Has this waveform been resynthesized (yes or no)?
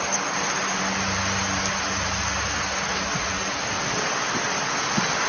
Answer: no